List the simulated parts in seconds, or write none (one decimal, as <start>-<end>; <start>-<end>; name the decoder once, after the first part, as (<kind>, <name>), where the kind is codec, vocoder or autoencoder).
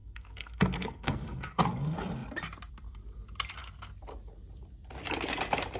0.0-1.6 (codec, SNAC)